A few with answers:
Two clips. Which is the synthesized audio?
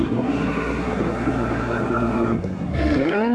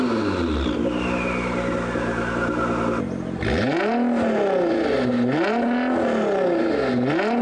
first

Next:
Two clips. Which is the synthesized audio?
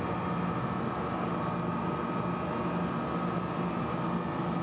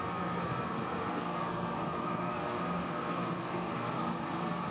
second